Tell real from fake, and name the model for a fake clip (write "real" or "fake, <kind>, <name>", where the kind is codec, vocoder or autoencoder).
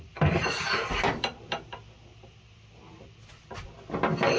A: real